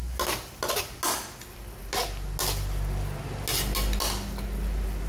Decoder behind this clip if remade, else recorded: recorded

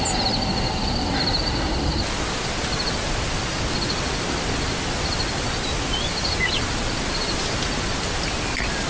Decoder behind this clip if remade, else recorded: recorded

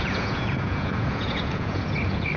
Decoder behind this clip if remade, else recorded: remade, vocoder, Vocos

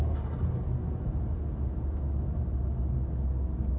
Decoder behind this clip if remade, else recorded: recorded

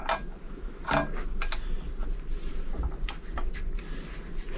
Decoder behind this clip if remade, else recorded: recorded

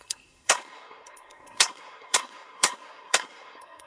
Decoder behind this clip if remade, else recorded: remade, codec, SNAC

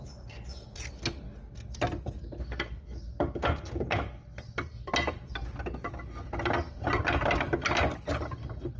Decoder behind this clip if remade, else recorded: recorded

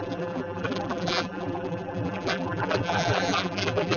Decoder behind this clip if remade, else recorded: remade, vocoder, BigVGAN v2